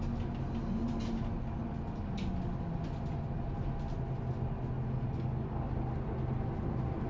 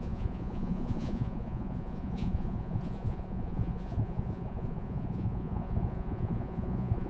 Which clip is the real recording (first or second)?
first